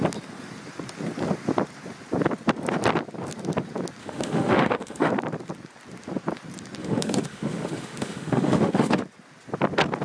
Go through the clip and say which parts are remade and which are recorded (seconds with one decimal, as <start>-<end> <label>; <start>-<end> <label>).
0.0-4.0 recorded; 4.0-5.1 remade; 5.1-6.8 recorded; 6.8-9.0 remade; 9.0-10.0 recorded